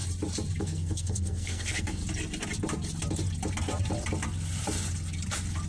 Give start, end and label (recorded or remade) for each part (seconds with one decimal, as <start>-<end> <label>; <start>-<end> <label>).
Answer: 0.0-0.6 recorded; 0.6-2.0 remade; 2.0-5.7 recorded